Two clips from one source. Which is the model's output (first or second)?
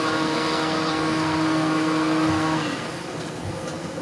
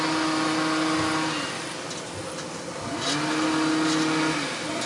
first